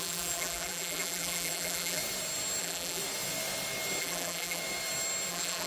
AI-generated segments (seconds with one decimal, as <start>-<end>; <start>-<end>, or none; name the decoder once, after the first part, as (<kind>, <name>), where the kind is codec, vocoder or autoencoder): 0.0-2.0 (vocoder, BigVGAN v2); 2.6-3.0; 4.0-4.6; 5.3-5.7